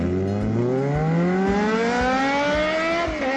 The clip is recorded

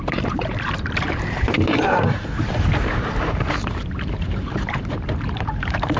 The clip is remade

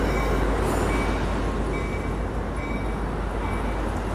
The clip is recorded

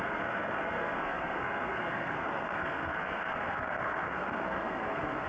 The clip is remade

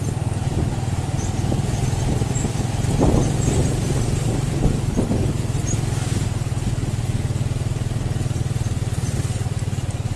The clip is recorded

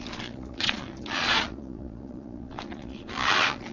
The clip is remade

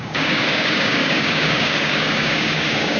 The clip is remade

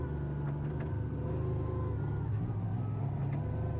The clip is recorded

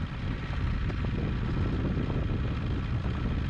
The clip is recorded